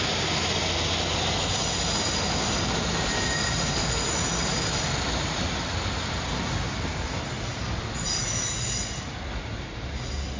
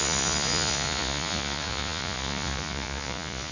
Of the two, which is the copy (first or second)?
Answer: second